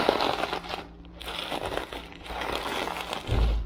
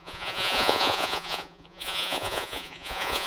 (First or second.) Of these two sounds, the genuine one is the first